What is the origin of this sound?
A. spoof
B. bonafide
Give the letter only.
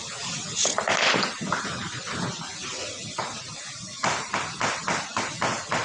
B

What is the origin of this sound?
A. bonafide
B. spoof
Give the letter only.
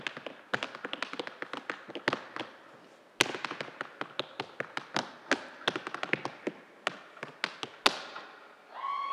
A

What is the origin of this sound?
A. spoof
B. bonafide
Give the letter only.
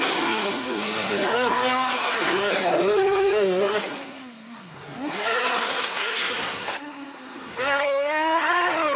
A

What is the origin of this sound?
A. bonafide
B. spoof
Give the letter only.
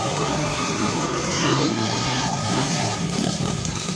B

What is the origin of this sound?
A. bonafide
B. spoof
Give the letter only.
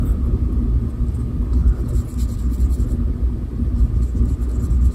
A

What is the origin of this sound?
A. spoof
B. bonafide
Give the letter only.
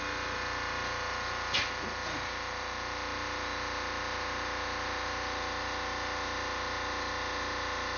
B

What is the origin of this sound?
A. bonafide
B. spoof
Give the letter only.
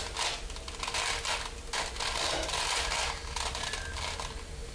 A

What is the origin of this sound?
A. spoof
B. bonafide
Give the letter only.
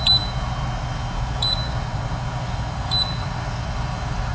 B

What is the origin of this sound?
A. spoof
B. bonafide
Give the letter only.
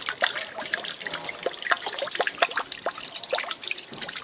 B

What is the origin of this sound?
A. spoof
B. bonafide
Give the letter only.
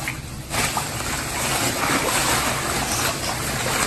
B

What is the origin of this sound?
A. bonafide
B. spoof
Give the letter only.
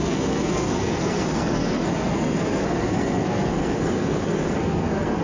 B